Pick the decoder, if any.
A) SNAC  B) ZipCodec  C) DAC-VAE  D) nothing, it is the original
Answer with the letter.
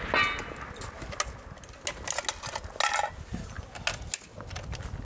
D